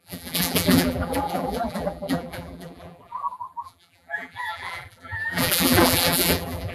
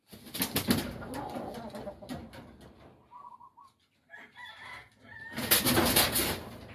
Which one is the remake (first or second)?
first